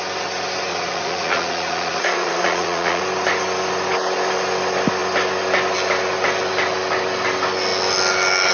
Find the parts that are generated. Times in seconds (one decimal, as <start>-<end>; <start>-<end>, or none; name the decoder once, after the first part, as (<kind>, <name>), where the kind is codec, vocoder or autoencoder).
0.7-3.0 (vocoder, Vocos)